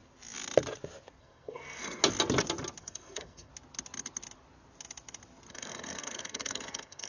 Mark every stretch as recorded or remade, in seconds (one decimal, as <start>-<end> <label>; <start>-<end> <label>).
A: 0.0-1.2 recorded; 1.2-2.0 remade; 2.0-2.8 recorded; 2.8-3.5 remade; 3.5-5.5 recorded; 5.5-7.1 remade